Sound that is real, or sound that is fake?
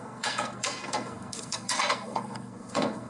fake